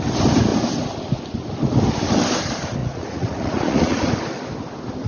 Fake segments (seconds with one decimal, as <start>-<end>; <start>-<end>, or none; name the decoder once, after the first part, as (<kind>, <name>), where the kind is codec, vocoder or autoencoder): 2.8-4.1 (vocoder, Vocos)